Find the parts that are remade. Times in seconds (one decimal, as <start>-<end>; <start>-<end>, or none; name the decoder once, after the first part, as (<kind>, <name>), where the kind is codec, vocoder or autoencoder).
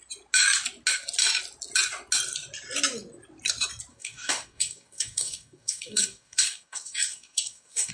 3.9-7.9 (codec, DAC)